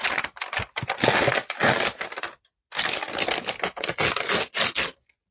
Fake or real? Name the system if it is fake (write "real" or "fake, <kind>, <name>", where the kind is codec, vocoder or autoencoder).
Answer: real